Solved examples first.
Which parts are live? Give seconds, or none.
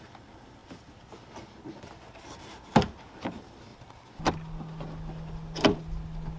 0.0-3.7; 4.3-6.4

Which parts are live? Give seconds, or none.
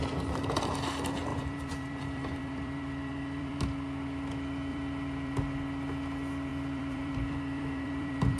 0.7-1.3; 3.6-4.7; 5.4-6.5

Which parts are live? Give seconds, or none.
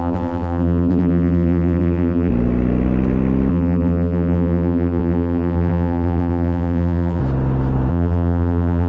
2.3-3.5; 7.2-7.9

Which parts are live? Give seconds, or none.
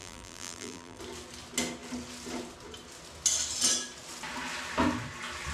1.0-5.5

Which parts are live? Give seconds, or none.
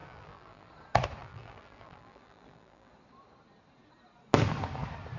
0.7-1.2; 2.9-5.2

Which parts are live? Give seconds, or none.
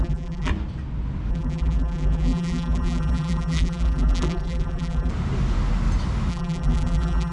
0.5-1.3; 5.1-6.3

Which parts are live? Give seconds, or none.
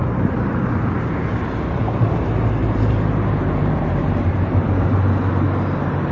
0.0-2.6; 5.3-6.1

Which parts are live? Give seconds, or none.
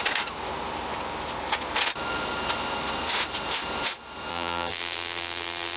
0.0-4.3